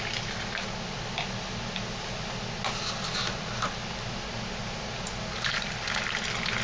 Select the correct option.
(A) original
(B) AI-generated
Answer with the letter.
A